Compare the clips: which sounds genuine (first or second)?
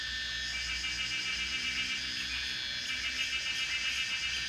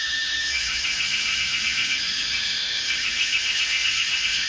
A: first